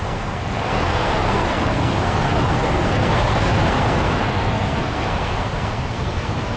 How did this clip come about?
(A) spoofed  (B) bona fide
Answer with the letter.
A